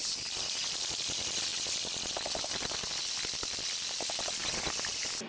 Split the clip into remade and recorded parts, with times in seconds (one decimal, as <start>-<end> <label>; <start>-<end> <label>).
0.0-5.3 recorded